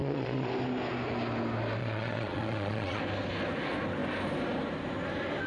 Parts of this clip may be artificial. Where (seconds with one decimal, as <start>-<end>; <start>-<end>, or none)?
0.0-0.5; 1.8-3.0